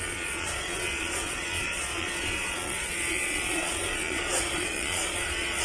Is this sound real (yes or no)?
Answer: no